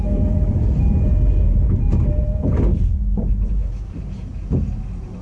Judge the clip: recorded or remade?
remade